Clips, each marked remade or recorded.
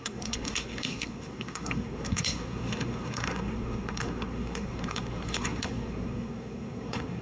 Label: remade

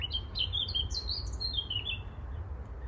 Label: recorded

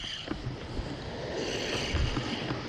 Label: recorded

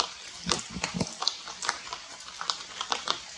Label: remade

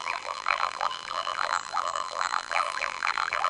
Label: remade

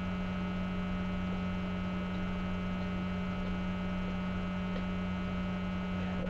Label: recorded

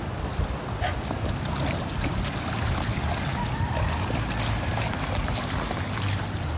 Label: recorded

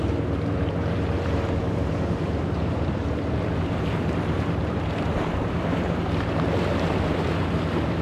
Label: remade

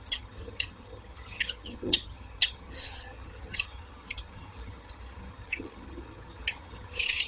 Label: remade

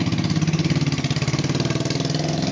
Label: recorded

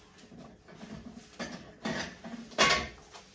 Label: recorded